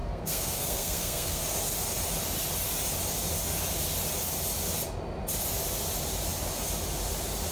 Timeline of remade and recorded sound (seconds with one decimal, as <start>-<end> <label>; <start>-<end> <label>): 0.0-1.4 remade; 1.4-7.5 recorded